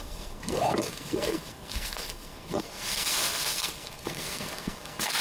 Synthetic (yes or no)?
yes